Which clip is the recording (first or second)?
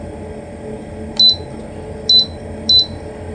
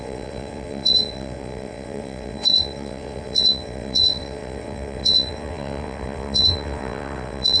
first